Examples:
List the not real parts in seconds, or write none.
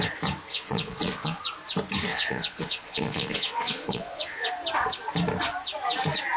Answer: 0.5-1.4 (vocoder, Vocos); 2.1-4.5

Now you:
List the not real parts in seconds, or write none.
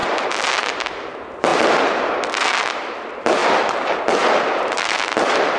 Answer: none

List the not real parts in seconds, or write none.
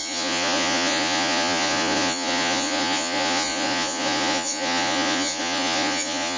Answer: 0.0-6.4 (vocoder, Vocos)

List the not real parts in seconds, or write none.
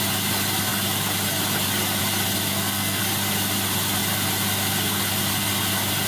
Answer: 2.5-3.0 (codec, SNAC)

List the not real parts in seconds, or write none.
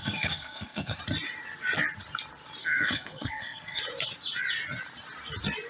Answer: 0.0-1.0 (codec, SNAC); 2.6-3.8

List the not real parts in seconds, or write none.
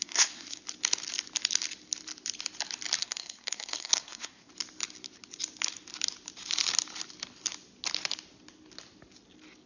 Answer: 0.0-0.6 (codec, SNAC); 3.0-4.5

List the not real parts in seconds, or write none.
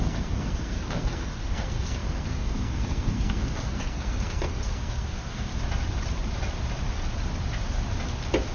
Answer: 0.0-5.5 (codec, SNAC)